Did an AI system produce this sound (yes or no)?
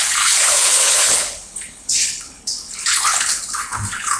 yes